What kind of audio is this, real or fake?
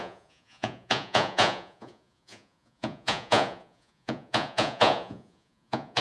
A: fake